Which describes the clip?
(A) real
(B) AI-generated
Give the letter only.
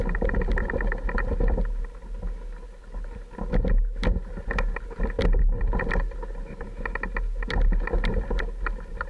A